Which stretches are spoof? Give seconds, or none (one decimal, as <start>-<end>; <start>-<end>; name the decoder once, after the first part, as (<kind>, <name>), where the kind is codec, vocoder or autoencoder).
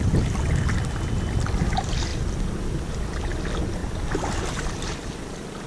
2.1-3.2 (vocoder, BigVGAN v2); 3.8-5.1